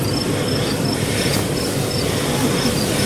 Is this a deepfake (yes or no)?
no